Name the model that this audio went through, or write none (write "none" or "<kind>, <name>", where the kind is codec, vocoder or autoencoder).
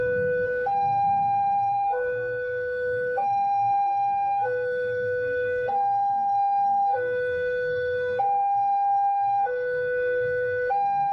codec, SNAC